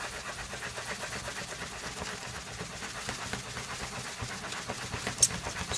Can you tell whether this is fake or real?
real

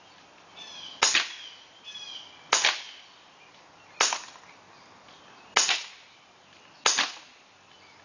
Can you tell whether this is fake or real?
real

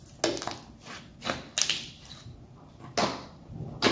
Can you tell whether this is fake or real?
real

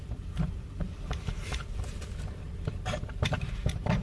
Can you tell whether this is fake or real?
fake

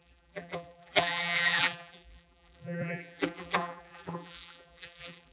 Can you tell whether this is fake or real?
fake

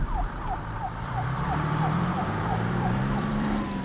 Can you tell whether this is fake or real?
fake